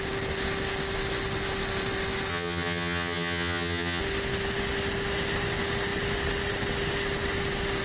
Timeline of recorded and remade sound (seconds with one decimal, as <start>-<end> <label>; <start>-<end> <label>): 0.0-2.3 recorded; 2.3-4.0 remade; 4.0-7.8 recorded